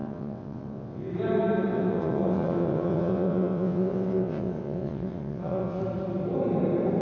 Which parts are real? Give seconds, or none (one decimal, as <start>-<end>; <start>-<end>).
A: 1.1-1.7; 5.8-7.0